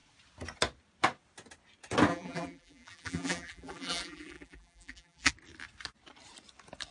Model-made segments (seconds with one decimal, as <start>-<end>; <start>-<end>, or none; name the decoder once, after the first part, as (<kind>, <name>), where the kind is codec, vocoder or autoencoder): 2.1-5.3 (vocoder, BigVGAN v2)